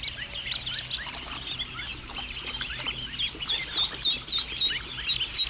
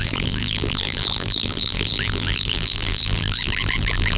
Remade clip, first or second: second